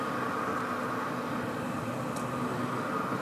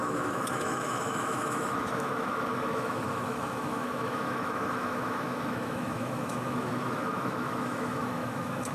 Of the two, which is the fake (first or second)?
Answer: second